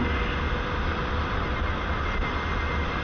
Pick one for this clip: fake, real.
real